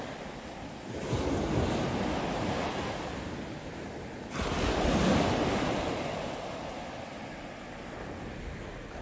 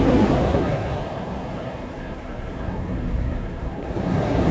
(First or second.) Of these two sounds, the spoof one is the second